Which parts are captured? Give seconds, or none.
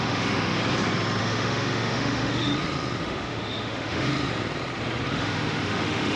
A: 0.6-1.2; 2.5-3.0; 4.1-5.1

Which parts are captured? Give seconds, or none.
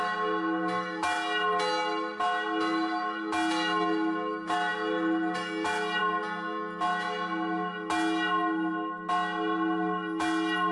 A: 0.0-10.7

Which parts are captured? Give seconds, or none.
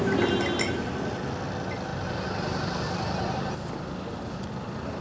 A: 0.0-5.0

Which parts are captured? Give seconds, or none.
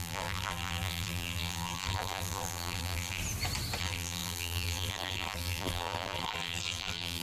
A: 3.2-3.8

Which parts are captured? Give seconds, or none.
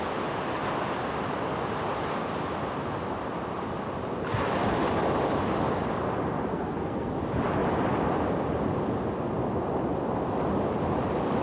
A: 0.0-6.5; 7.1-11.4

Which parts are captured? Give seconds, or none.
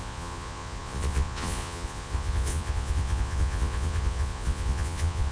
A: none